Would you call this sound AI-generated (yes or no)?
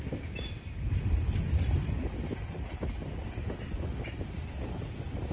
yes